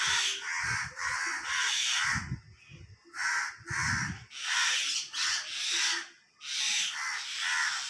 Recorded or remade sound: recorded